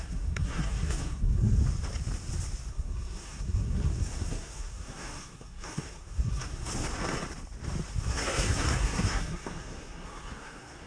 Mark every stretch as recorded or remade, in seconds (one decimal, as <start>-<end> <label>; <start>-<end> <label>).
0.0-1.6 remade; 1.6-2.7 recorded; 2.7-6.7 remade; 6.7-8.1 recorded; 8.1-10.9 remade